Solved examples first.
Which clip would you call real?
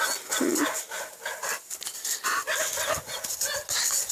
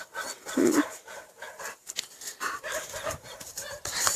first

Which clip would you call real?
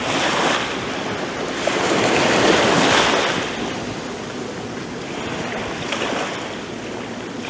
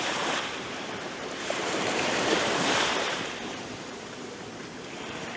first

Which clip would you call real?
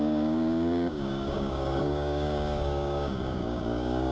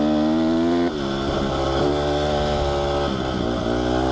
second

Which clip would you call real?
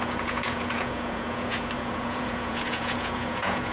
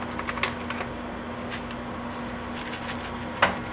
second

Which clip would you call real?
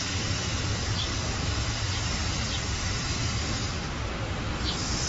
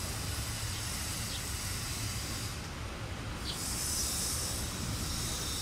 second